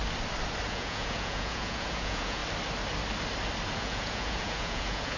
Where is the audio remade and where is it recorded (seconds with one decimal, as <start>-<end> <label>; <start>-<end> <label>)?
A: 0.0-0.7 recorded; 0.7-2.4 remade; 2.4-3.7 recorded; 3.7-5.2 remade